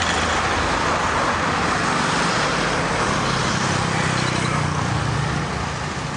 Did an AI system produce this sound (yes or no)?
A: no